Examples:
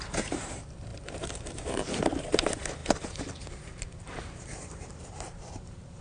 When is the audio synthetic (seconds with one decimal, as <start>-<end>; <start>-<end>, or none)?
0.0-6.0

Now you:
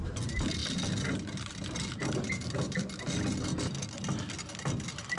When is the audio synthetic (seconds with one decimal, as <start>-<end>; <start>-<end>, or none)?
none

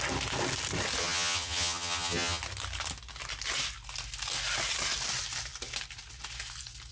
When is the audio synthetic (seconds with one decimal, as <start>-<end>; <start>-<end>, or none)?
1.0-2.4

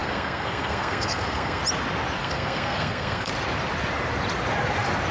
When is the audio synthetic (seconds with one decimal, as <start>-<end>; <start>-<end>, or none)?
0.0-1.6; 2.2-3.3